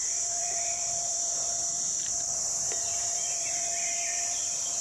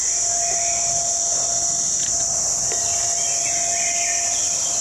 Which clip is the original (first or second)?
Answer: second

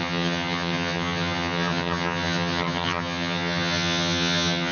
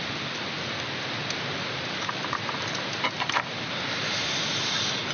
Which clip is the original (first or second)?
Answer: second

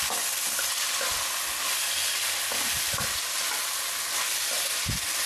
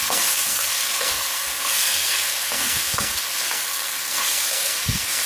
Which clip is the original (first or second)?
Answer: first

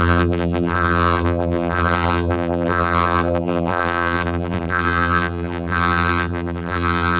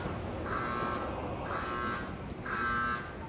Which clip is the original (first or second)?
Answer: second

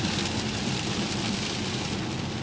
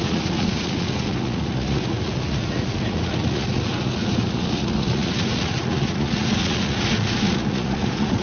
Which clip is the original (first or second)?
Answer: first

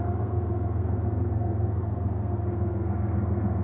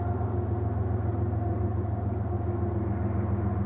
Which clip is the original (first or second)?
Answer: second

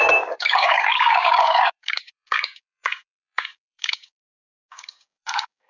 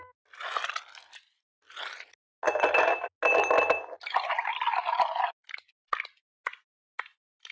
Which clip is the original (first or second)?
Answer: second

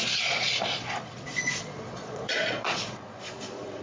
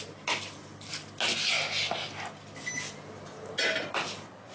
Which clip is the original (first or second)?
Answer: second